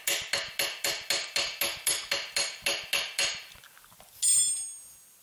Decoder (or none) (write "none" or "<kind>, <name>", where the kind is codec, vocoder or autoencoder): none